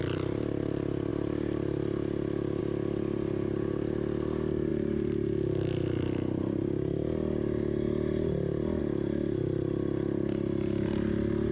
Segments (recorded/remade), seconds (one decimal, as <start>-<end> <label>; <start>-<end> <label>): 0.0-11.5 recorded